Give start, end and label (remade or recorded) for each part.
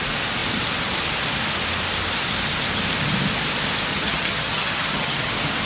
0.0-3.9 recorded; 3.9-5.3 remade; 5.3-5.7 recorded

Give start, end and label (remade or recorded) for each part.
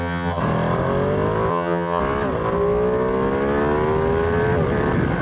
0.0-0.4 remade; 0.4-1.5 recorded; 1.5-2.0 remade; 2.0-5.2 recorded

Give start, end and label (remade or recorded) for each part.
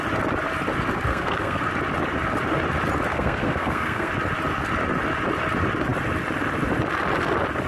0.0-1.1 recorded; 1.1-1.6 remade; 1.6-3.1 recorded; 3.1-4.1 remade; 4.1-7.7 recorded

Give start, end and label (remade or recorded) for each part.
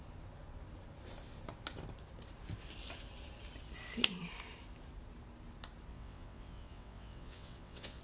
0.0-5.9 recorded; 5.9-8.0 remade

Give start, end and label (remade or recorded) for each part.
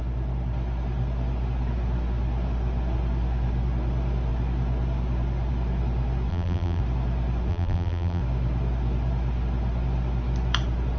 0.0-6.3 recorded; 6.3-6.8 remade; 6.8-7.5 recorded; 7.5-8.2 remade; 8.2-11.0 recorded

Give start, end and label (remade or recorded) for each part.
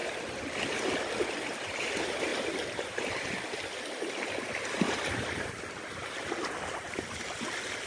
0.0-2.3 remade; 2.3-4.8 recorded; 4.8-7.9 remade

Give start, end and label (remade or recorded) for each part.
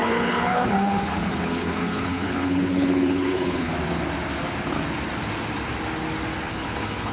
0.0-3.7 remade; 3.7-6.5 recorded; 6.5-7.1 remade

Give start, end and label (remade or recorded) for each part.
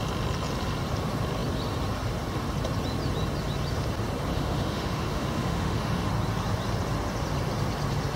0.0-4.3 recorded; 4.3-6.1 remade; 6.1-8.2 recorded